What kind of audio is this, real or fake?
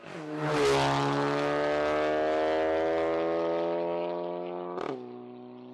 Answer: real